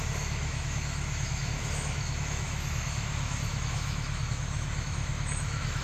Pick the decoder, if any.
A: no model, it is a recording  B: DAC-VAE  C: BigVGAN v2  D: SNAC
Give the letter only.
B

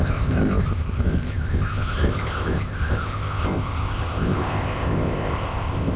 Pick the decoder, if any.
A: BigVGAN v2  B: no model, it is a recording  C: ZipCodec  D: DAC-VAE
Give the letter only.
C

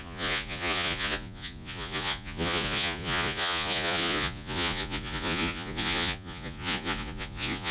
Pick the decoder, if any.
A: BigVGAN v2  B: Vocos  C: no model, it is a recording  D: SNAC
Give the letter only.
B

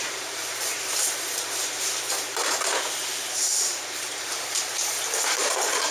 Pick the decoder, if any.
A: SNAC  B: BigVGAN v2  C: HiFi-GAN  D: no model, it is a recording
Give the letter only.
B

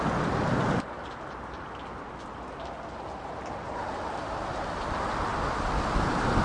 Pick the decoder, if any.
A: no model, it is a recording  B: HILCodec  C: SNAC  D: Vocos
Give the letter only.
A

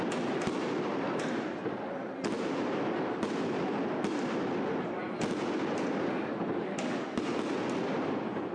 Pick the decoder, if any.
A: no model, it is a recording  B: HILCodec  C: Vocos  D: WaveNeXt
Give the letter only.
A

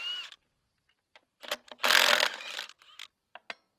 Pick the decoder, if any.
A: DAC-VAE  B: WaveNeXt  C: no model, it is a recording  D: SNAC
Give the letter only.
C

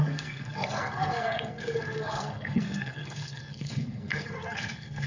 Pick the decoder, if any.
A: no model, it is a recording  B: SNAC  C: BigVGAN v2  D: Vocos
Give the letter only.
B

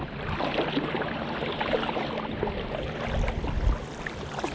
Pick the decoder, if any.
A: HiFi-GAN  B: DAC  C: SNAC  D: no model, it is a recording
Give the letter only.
D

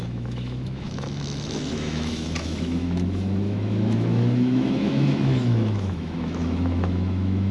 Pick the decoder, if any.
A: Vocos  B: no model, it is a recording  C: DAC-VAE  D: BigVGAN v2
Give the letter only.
C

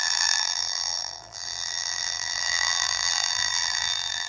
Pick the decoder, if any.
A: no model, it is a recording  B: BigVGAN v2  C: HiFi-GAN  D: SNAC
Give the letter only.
B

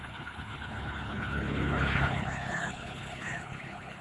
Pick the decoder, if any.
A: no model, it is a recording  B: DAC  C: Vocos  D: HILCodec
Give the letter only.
D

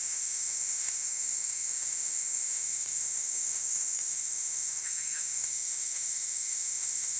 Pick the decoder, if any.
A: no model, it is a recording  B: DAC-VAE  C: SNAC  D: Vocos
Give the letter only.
B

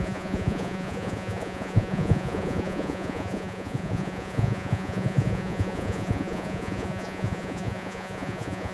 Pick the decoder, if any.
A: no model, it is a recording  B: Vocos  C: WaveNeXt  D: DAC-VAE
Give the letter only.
B